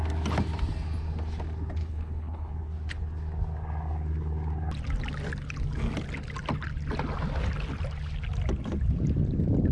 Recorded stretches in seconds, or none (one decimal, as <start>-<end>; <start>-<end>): 0.0-1.8; 2.5-9.7